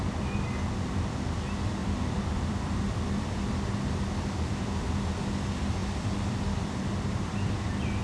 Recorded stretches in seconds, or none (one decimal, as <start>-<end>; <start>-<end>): 0.0-1.8; 3.6-5.8; 7.5-8.0

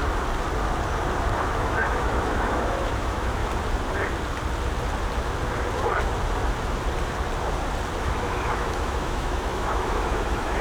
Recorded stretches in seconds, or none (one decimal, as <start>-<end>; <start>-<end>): 0.0-1.4; 3.4-8.0

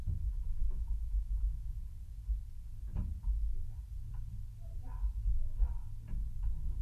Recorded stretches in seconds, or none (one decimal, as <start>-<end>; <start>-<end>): 0.0-0.6; 1.8-6.8

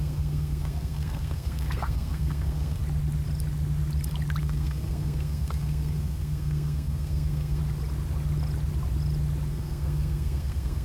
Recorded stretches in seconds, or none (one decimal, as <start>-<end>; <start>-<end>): 2.8-4.4; 7.6-9.5

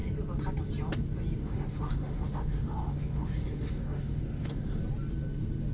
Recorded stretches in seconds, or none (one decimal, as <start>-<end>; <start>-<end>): 0.0-1.4; 4.8-5.7

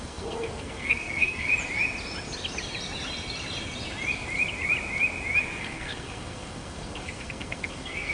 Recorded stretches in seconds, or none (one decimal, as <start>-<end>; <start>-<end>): 1.5-5.6

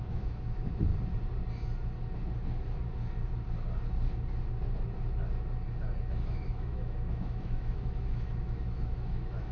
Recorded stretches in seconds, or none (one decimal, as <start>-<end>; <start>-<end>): 0.9-6.0

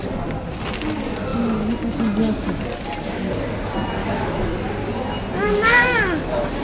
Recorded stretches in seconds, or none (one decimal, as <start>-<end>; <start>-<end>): 0.0-4.0; 4.5-6.6